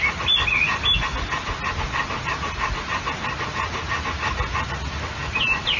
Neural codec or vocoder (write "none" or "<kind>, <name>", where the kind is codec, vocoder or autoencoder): none